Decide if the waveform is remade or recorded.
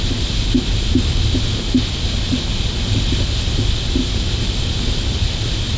recorded